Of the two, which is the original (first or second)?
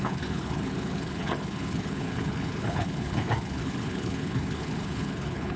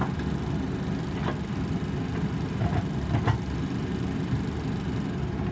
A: second